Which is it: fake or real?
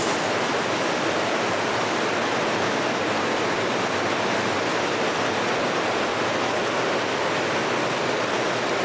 real